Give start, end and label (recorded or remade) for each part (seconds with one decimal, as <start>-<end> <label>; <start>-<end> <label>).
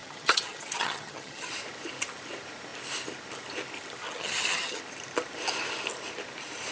0.0-1.5 remade; 1.5-4.0 recorded; 4.0-4.8 remade; 4.8-6.7 recorded